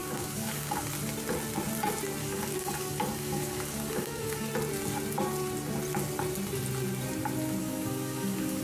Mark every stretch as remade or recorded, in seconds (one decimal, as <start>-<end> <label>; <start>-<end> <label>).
0.0-0.9 remade; 0.9-2.2 recorded; 2.2-4.5 remade; 4.5-7.6 recorded; 7.6-8.6 remade